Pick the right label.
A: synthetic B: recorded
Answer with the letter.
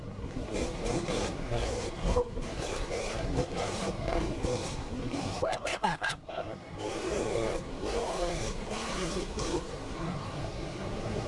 A